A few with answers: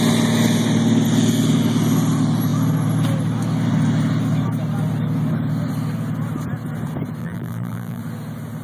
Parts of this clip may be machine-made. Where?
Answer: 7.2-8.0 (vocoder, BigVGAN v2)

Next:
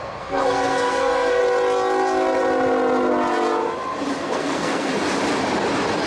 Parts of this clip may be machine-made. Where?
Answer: 0.0-1.4 (codec, SNAC); 4.2-4.9

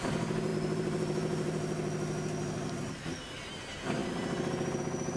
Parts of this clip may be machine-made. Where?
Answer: 0.5-3.6 (vocoder, BigVGAN v2)